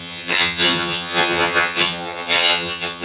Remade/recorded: remade